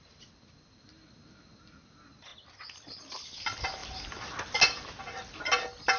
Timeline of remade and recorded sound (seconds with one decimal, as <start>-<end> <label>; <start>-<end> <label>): 0.0-6.0 recorded